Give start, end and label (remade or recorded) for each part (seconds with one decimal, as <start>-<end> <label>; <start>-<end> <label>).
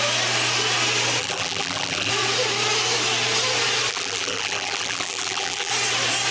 0.0-1.2 recorded; 1.2-2.1 remade; 2.1-3.9 recorded; 3.9-5.7 remade; 5.7-6.3 recorded